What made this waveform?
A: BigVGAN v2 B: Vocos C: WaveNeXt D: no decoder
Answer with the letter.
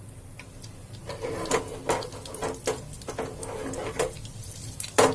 D